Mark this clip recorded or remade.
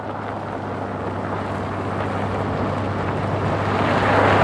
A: recorded